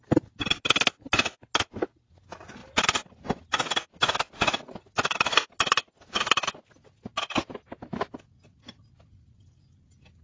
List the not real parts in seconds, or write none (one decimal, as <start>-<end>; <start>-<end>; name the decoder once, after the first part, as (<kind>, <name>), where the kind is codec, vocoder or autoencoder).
none